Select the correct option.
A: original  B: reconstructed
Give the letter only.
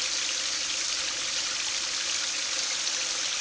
A